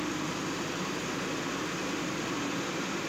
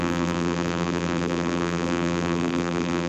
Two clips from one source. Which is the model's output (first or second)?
second